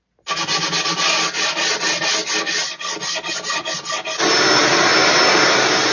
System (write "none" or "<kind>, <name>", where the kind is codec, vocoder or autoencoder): none